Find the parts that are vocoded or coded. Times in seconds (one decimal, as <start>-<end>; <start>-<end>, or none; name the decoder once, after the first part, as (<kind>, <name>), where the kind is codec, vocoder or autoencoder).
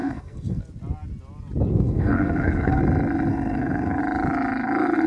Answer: 0.0-0.6 (codec, SNAC); 1.7-2.8; 3.3-4.0